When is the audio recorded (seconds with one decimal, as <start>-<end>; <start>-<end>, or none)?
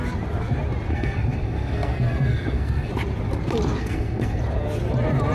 0.0-0.9; 2.9-3.8; 4.4-5.3